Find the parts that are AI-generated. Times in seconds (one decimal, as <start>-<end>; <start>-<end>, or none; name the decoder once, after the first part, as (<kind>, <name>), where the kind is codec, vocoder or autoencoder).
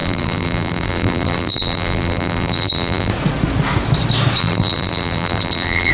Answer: 0.0-3.1 (vocoder, BigVGAN v2); 4.4-5.9